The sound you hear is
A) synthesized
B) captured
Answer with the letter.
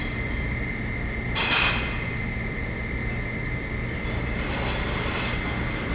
B